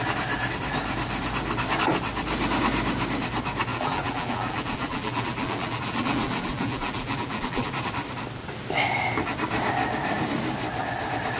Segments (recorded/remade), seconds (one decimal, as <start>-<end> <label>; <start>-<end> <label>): 0.0-3.7 recorded; 3.7-7.7 remade; 7.7-11.4 recorded